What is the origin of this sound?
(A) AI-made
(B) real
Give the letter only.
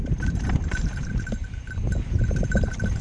A